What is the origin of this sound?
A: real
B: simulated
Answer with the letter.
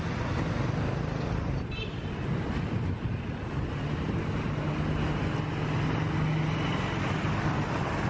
A